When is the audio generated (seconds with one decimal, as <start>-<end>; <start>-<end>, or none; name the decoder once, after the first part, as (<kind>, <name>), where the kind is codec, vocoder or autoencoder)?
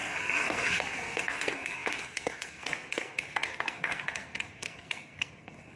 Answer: 0.0-5.8 (codec, SNAC)